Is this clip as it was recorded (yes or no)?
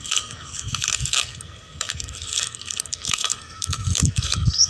no